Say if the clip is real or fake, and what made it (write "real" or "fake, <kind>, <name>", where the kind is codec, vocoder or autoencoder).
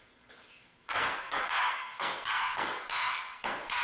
fake, codec, SNAC